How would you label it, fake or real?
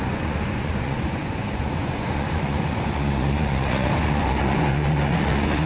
fake